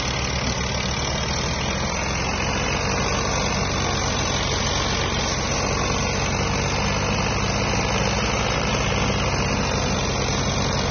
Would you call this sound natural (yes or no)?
yes